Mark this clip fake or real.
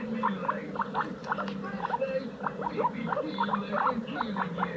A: real